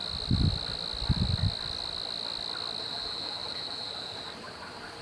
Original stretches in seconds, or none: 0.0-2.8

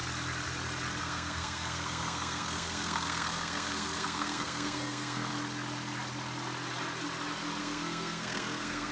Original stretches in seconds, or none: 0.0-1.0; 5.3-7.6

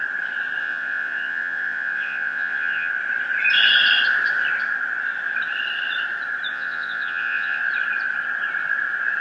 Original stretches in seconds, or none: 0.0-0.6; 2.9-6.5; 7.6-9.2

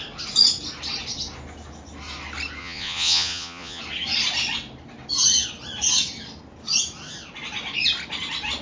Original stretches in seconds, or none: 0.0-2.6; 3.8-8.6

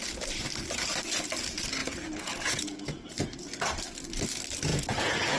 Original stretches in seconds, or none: 0.0-1.8; 3.1-4.7

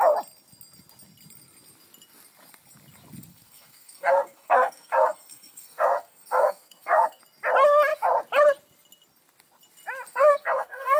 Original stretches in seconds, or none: 0.0-3.3; 7.2-10.1

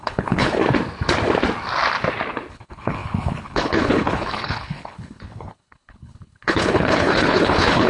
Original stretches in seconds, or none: 0.6-2.5